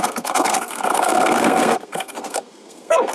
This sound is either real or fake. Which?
fake